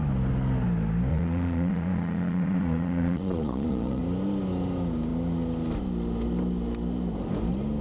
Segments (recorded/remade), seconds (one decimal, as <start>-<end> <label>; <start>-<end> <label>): 0.0-1.1 recorded; 1.1-4.0 remade; 4.0-7.8 recorded